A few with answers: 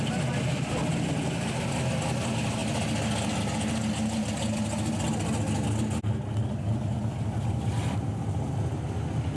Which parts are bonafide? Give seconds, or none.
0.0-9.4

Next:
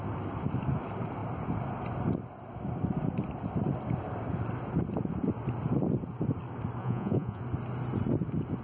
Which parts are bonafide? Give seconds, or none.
0.0-6.8; 7.4-8.6

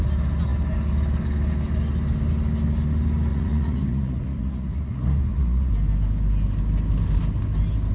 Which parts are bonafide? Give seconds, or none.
0.0-3.3; 5.7-7.9

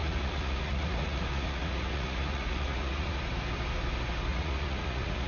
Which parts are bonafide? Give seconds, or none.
3.2-4.3

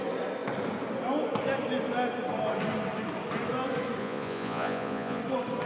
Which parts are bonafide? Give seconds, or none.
0.0-4.0; 5.2-5.7

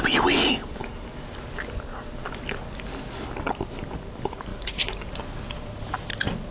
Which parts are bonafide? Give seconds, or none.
0.0-6.5